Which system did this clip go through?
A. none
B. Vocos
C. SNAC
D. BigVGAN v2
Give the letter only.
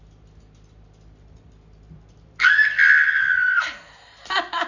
A